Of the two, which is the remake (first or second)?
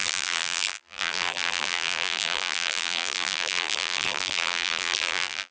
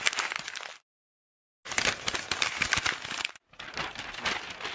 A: first